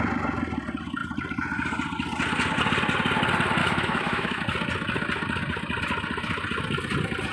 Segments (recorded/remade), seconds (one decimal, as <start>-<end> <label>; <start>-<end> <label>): 0.0-3.6 recorded; 3.6-4.4 remade; 4.4-7.3 recorded